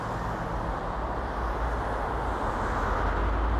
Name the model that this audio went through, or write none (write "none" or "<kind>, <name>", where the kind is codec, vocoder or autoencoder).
none